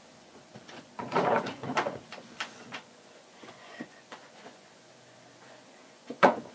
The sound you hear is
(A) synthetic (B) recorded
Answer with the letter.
A